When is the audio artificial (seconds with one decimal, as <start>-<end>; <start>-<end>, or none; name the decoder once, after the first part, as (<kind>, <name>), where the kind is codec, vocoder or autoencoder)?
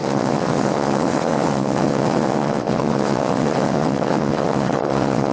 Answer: 0.0-5.3 (vocoder, WaveNeXt)